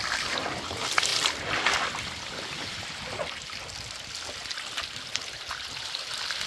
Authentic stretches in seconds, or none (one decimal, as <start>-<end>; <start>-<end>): 0.0-1.1; 3.0-5.1; 5.8-6.5